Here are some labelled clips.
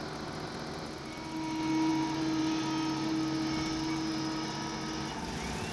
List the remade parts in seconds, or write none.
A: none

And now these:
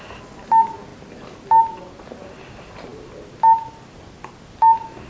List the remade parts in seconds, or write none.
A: none